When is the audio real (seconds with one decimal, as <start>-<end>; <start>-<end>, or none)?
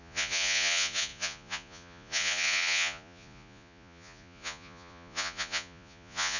none